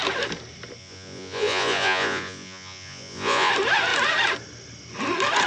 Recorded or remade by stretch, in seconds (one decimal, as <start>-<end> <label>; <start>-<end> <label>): 0.0-0.8 recorded; 0.8-3.5 remade; 3.5-5.5 recorded